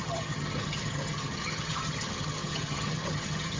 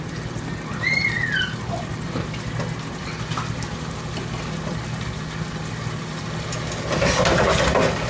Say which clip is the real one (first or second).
second